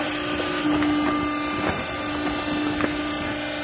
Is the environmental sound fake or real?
real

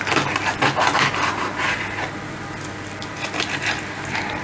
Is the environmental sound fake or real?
real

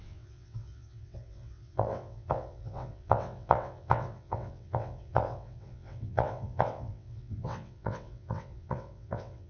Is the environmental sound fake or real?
fake